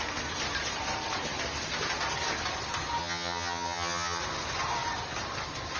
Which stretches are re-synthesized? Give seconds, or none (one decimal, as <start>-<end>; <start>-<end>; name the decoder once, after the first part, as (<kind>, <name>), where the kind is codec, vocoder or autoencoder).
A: 3.0-4.2 (vocoder, HiFi-GAN)